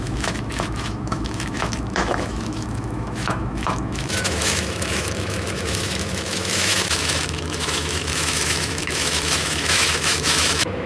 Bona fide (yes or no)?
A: no